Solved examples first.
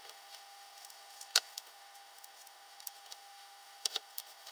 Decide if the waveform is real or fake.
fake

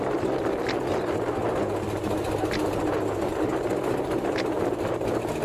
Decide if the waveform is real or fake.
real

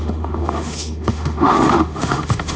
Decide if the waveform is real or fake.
fake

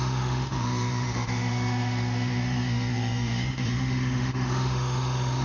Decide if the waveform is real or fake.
fake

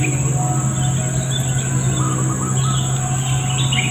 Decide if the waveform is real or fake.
real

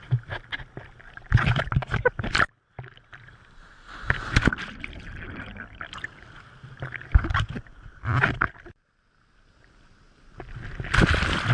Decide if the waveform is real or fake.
real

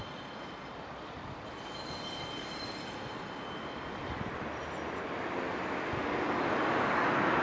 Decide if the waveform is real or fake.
real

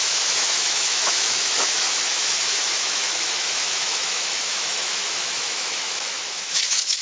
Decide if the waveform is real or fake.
fake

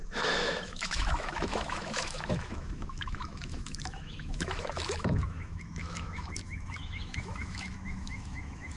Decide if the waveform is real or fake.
fake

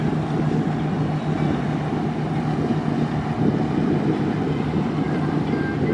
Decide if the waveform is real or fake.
real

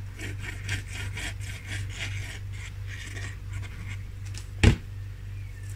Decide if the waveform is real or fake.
real